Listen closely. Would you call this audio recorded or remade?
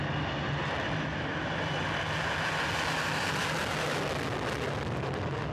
recorded